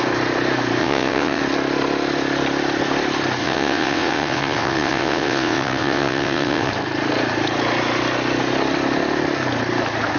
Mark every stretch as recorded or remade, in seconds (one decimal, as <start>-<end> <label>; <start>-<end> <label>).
0.0-0.8 recorded; 0.8-1.4 remade; 1.4-3.4 recorded; 3.4-6.7 remade; 6.7-10.2 recorded